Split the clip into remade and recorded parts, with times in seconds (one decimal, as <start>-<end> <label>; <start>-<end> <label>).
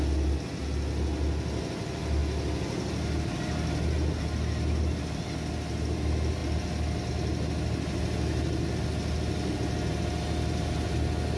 0.0-11.4 recorded